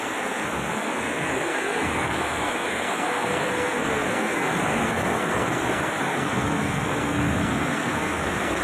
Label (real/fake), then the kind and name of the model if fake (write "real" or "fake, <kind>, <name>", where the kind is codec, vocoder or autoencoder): fake, codec, SNAC